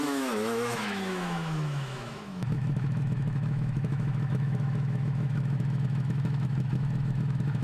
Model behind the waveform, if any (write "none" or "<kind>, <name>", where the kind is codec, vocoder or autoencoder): autoencoder, DAC-VAE